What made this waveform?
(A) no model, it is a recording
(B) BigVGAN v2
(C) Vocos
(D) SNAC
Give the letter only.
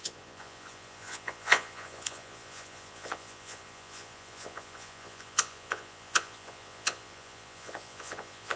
C